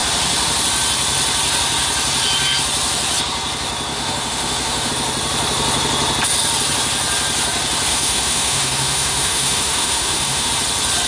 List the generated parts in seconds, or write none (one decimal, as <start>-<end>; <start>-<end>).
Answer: 3.9-4.9; 7.9-10.5